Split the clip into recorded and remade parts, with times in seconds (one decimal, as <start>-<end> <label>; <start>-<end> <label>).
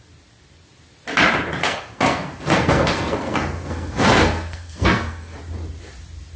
0.0-1.6 recorded; 1.6-5.4 remade; 5.4-6.4 recorded